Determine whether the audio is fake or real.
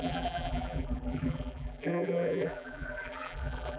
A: fake